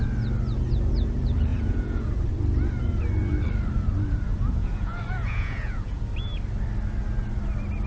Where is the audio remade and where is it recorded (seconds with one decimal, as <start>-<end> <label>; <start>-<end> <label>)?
0.0-1.5 recorded; 1.5-2.1 remade; 2.1-4.3 recorded; 4.3-6.0 remade; 6.0-7.9 recorded